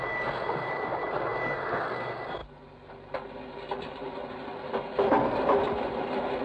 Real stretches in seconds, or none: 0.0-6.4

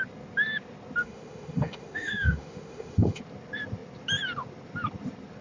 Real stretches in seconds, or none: 0.0-1.0; 3.2-5.4

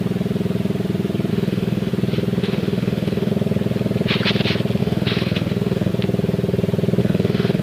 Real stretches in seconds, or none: 0.0-1.3; 1.9-2.4; 3.3-4.8; 5.9-7.0